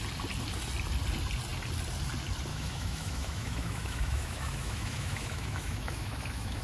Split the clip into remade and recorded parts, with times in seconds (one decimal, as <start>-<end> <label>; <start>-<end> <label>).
0.0-2.5 recorded; 2.5-6.6 remade